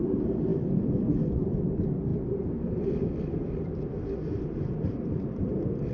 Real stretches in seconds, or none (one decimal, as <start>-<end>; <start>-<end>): 0.0-5.9